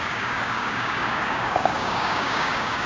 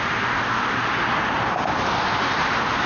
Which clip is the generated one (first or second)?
first